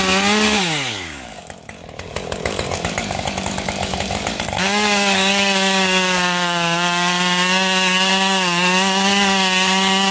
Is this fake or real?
fake